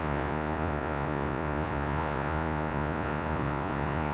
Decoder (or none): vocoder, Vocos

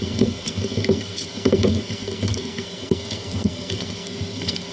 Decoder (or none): codec, SNAC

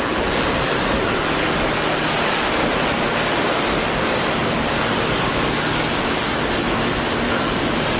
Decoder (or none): none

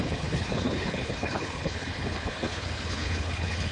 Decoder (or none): codec, HILCodec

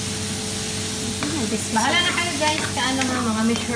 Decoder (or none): none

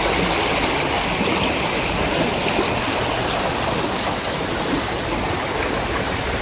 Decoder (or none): none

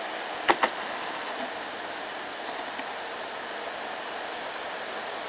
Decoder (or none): none